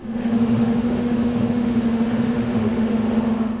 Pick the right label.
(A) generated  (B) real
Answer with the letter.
A